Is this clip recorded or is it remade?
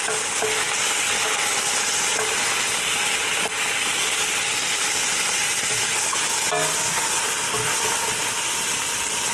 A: recorded